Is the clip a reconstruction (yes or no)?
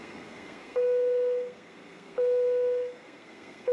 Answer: yes